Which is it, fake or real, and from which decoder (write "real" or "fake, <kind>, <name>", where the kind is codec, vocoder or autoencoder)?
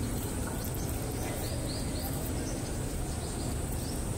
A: real